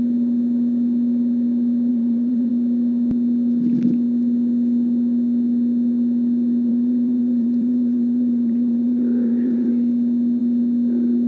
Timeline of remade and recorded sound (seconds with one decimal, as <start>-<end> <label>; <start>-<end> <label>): 0.0-1.9 recorded; 1.9-2.5 remade; 2.5-6.7 recorded; 6.7-9.7 remade; 9.7-11.3 recorded